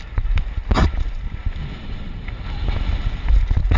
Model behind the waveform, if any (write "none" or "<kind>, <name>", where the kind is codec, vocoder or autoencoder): none